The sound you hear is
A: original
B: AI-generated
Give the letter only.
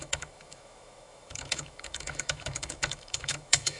B